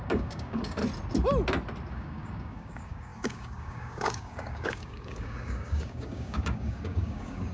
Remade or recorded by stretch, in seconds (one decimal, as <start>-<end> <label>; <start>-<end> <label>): 0.0-0.8 remade; 0.8-1.9 recorded; 1.9-7.5 remade